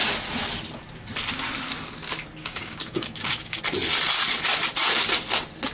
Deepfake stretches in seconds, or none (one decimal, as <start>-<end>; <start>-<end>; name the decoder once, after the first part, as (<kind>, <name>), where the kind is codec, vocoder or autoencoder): 2.4-3.6 (codec, DAC)